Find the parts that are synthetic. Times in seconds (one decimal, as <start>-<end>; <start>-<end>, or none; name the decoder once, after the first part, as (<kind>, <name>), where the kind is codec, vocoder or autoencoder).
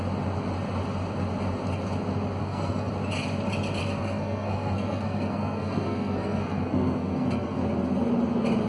2.4-2.9 (codec, SNAC); 3.8-7.6